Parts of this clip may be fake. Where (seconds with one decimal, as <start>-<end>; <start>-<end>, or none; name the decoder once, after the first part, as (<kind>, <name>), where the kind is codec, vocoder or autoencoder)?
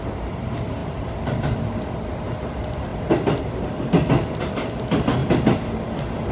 0.0-2.9 (vocoder, BigVGAN v2); 4.4-5.2